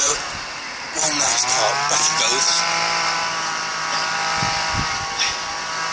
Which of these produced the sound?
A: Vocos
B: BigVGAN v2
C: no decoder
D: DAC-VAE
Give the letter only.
B